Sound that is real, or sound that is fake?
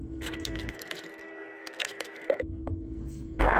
fake